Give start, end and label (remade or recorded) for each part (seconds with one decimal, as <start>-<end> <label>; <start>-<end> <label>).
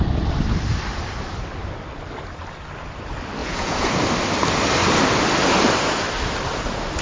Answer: 0.0-3.4 recorded; 3.4-3.9 remade; 3.9-7.0 recorded